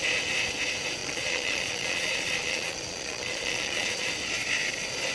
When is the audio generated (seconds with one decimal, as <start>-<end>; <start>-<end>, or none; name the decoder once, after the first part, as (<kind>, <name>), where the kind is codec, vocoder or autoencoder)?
1.0-4.1 (vocoder, Vocos)